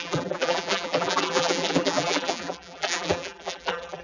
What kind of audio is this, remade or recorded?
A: remade